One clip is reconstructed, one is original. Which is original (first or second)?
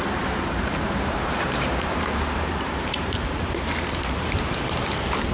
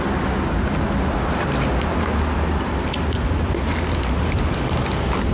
second